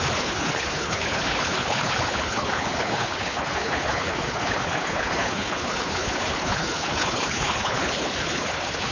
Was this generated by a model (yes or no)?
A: yes